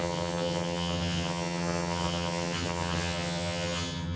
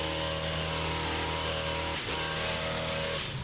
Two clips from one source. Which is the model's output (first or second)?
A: first